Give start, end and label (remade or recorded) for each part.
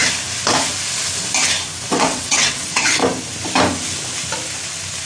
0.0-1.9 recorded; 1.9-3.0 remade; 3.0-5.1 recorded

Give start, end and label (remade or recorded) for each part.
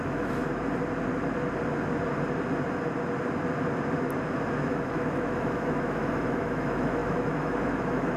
0.0-0.4 remade; 0.4-4.7 recorded; 4.7-8.2 remade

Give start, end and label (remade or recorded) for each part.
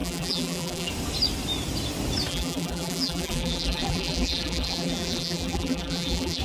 0.0-0.9 remade; 0.9-2.3 recorded; 2.3-6.4 remade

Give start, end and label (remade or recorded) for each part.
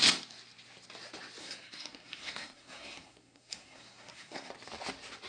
0.0-1.4 recorded; 1.4-4.5 remade; 4.5-5.3 recorded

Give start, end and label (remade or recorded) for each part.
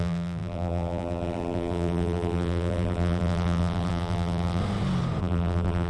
0.0-4.6 remade; 4.6-5.2 recorded; 5.2-5.9 remade